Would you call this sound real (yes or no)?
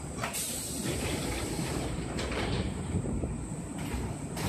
no